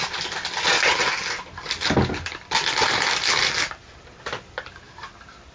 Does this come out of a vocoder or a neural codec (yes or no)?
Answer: no